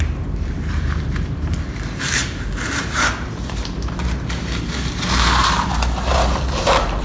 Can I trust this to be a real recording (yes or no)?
no